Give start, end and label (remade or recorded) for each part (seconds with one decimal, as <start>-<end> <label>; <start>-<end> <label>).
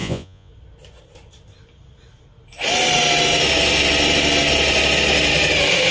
0.0-0.5 remade; 0.5-5.9 recorded